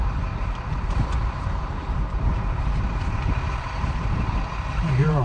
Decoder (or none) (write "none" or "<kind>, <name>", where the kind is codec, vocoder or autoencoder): vocoder, BigVGAN v2